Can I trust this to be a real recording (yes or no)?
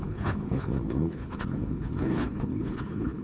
no